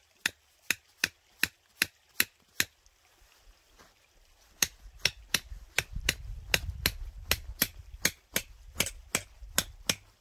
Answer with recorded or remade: recorded